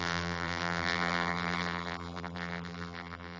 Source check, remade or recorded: remade